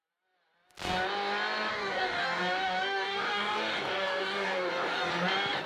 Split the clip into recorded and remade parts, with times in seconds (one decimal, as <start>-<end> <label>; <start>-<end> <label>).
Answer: 0.0-1.7 recorded; 1.7-5.1 remade; 5.1-5.7 recorded

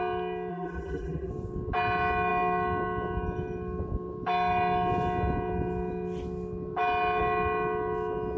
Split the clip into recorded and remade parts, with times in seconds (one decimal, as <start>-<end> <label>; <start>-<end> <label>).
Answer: 0.0-0.5 recorded; 0.5-1.3 remade; 1.3-8.4 recorded

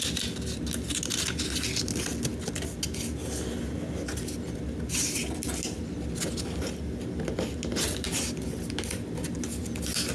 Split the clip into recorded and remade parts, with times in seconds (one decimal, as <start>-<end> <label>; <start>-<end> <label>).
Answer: 0.0-10.1 recorded

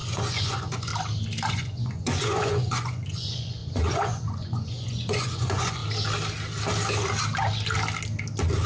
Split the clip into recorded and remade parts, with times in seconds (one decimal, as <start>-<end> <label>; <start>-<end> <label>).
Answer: 0.0-0.9 remade; 0.9-1.5 recorded; 1.5-5.8 remade; 5.8-8.7 recorded

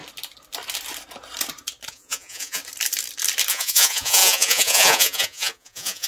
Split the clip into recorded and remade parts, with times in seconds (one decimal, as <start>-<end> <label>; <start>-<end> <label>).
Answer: 0.0-1.9 recorded; 1.9-2.6 remade; 2.6-3.5 recorded; 3.5-6.1 remade

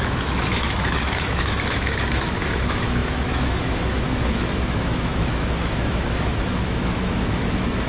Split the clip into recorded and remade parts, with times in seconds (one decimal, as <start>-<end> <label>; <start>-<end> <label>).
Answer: 0.0-7.9 remade